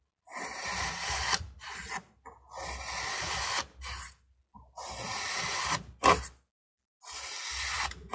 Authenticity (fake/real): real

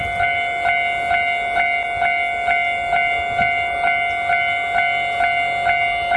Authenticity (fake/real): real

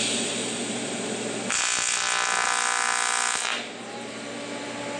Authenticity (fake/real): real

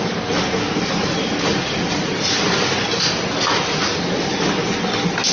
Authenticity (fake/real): real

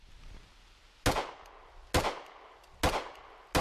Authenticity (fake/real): real